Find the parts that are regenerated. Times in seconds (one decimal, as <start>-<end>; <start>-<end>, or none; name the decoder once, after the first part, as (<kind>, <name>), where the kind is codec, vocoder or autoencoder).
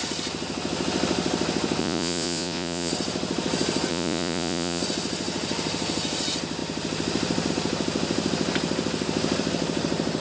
1.8-2.9 (vocoder, Vocos); 3.9-4.8